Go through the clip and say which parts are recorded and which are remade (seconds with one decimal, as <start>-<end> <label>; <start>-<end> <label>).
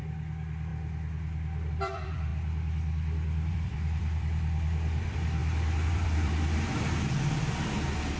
0.0-0.7 remade; 0.7-1.7 recorded; 1.7-2.3 remade; 2.3-3.5 recorded; 3.5-5.4 remade; 5.4-5.9 recorded; 5.9-8.2 remade